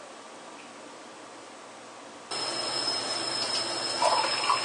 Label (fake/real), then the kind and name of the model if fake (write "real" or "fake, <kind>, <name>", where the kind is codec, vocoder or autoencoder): real